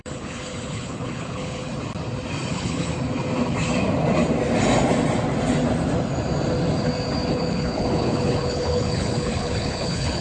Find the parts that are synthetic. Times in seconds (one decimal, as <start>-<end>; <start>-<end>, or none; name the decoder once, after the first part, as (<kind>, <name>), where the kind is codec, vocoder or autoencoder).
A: 0.0-1.7 (codec, HILCodec); 2.5-2.9; 7.3-10.2